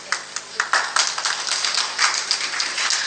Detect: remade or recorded recorded